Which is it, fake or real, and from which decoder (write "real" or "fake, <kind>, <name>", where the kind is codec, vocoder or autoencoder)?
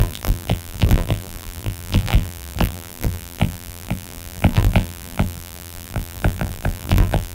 fake, vocoder, BigVGAN v2